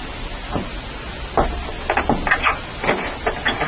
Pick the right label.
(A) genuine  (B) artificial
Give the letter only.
A